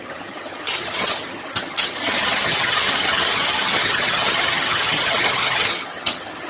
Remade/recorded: remade